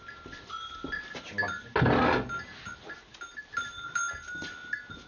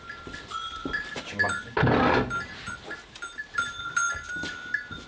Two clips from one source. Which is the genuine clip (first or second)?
first